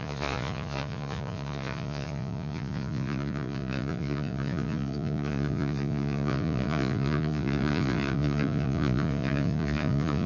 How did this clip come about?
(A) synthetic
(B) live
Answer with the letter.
A